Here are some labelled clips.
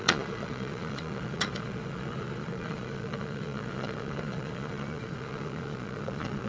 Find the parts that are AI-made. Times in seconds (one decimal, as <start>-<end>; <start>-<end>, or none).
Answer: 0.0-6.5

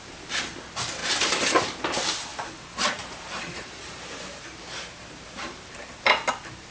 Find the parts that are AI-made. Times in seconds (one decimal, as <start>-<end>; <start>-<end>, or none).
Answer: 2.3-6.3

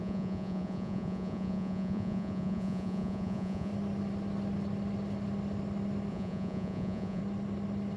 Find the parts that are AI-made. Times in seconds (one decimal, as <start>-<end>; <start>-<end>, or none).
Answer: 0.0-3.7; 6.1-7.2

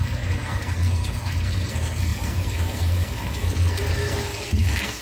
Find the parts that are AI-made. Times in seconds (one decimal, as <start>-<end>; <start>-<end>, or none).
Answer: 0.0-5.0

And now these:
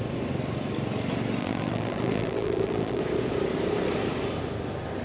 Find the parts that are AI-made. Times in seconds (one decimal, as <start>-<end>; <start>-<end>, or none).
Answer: 1.4-3.0

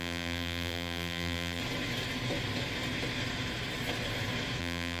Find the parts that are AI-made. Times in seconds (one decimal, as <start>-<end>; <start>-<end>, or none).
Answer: 0.0-1.6; 4.6-5.0

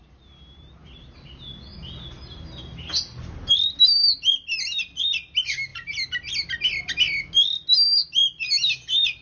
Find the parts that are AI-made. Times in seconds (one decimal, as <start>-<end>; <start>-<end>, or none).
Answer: none